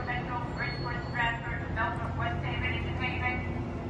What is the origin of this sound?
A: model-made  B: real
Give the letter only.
B